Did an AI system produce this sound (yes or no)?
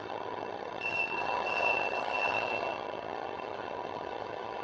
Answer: yes